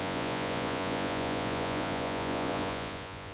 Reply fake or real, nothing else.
fake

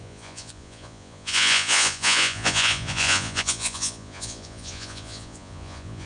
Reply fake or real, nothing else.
fake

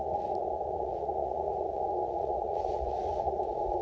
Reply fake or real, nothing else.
fake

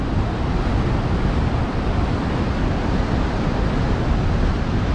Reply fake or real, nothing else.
real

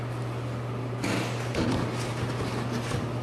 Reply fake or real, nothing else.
real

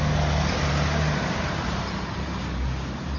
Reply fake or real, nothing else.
real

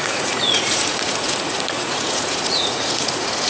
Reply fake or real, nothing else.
fake